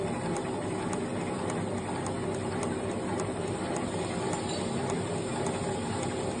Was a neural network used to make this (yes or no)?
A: no